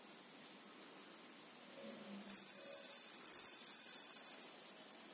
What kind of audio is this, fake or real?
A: real